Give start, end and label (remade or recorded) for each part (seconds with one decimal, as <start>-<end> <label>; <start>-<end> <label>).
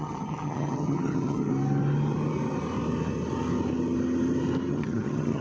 0.0-1.5 remade; 1.5-4.7 recorded; 4.7-5.4 remade